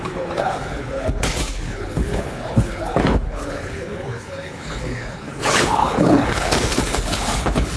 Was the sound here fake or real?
fake